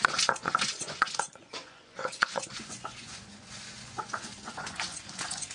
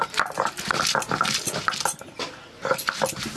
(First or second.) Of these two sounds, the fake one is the first